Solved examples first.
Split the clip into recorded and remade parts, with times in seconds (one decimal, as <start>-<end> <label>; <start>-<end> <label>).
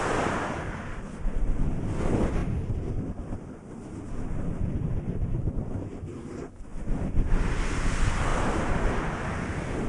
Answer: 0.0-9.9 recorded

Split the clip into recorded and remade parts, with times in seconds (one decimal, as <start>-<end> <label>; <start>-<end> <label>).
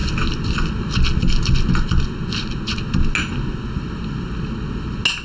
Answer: 0.0-5.2 recorded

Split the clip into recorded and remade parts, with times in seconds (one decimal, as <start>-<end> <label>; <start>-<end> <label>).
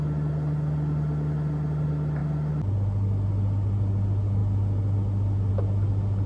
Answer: 0.0-6.3 recorded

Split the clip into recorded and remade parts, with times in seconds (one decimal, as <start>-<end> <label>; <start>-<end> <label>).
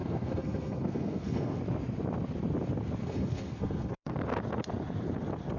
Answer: 0.0-1.6 remade; 1.6-3.0 recorded; 3.0-4.1 remade; 4.1-5.6 recorded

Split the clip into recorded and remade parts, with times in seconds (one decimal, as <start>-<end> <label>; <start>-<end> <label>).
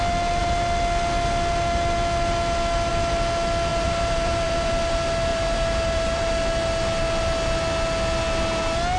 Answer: 0.0-3.7 recorded; 3.7-4.7 remade; 4.7-5.3 recorded; 5.3-6.3 remade; 6.3-9.0 recorded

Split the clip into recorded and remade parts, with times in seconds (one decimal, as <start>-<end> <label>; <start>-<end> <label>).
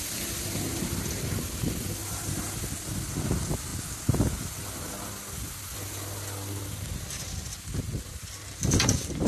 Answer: 0.0-9.3 recorded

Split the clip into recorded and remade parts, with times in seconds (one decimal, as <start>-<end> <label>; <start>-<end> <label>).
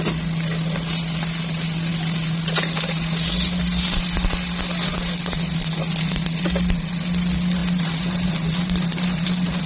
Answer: 0.0-9.7 recorded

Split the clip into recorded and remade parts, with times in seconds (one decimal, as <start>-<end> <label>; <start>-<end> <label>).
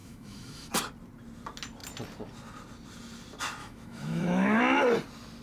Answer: 0.0-0.7 remade; 0.7-3.6 recorded; 3.6-4.6 remade; 4.6-5.4 recorded